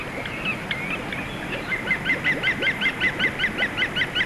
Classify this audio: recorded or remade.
recorded